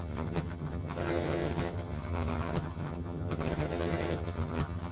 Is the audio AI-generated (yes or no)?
yes